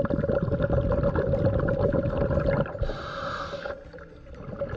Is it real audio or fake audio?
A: real